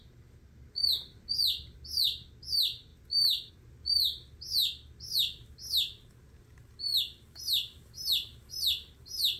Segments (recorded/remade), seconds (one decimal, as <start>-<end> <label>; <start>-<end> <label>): 0.0-9.4 recorded